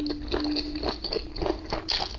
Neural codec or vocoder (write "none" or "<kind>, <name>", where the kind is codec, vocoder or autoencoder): none